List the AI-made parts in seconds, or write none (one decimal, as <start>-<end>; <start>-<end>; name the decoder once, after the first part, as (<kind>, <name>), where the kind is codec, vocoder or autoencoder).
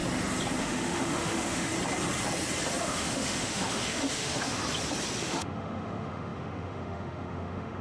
0.6-1.7 (autoencoder, DAC-VAE); 2.8-4.6; 5.2-7.8